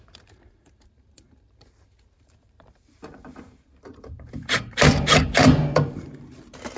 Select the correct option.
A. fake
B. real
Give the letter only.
A